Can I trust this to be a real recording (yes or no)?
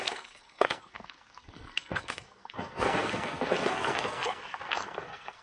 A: no